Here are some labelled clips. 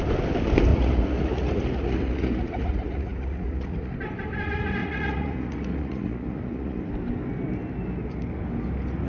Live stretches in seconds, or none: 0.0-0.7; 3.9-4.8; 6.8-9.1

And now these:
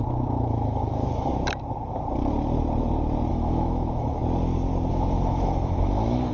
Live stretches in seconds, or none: 1.3-3.3; 4.2-4.9